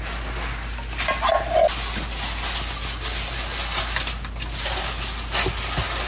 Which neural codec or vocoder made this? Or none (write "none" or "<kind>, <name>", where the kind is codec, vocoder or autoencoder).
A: none